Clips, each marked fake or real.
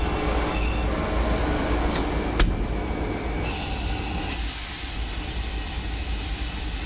real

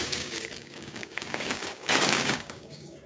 fake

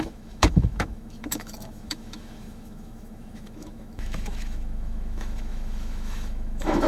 fake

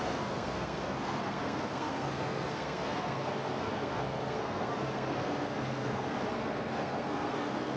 fake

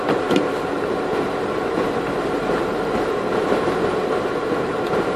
fake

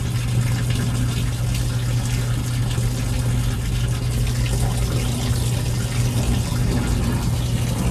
real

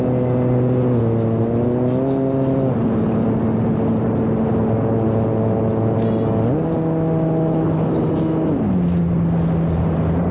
real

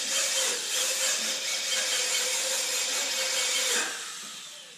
real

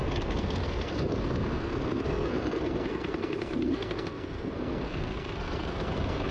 fake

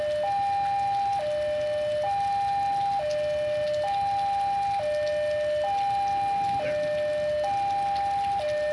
real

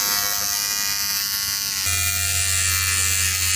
real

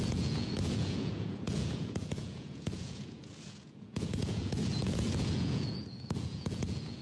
fake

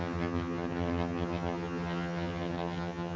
fake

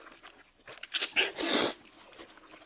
real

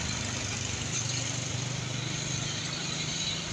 fake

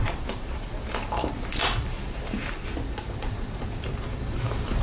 fake